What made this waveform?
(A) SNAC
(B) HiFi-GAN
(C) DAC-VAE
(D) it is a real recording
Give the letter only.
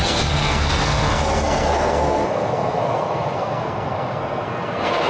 A